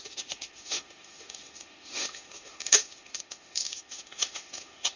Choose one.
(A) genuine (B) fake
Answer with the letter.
B